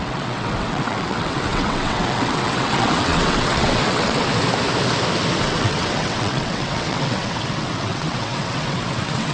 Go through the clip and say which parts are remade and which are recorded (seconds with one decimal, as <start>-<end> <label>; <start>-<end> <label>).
0.0-4.3 remade; 4.3-5.4 recorded; 5.4-9.3 remade